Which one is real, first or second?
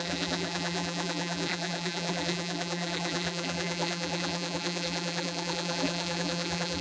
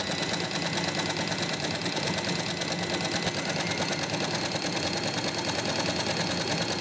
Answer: second